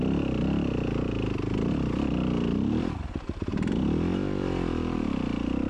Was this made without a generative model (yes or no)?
no